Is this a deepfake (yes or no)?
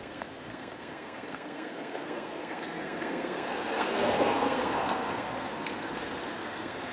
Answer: yes